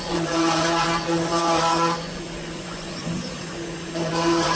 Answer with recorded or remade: remade